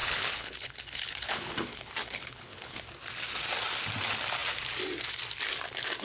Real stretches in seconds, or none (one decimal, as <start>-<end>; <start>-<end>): 2.8-6.0